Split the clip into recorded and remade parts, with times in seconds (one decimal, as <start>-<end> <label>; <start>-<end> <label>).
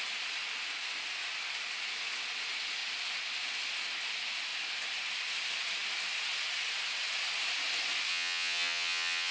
0.0-8.1 recorded; 8.1-9.3 remade